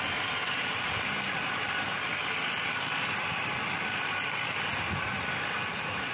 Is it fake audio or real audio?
fake